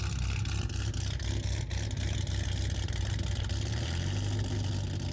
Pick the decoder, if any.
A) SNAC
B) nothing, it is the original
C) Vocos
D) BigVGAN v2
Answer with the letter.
B